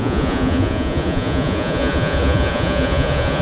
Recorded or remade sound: remade